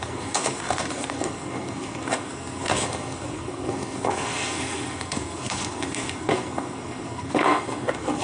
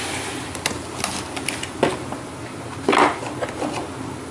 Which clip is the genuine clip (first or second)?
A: second